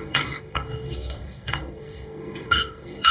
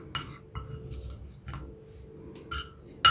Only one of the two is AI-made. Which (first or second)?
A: first